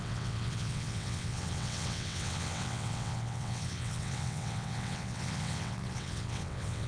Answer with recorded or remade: remade